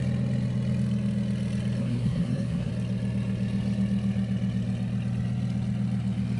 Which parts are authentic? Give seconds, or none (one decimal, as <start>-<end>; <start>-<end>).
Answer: 0.0-1.8; 2.7-6.4